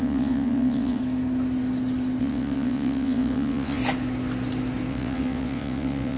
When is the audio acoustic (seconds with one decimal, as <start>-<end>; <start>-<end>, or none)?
1.0-2.2; 3.8-4.9